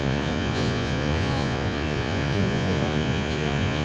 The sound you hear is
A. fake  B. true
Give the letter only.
A